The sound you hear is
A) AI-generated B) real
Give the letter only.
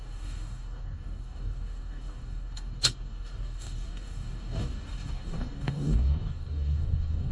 A